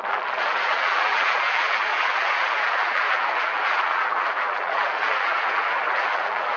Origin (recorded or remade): remade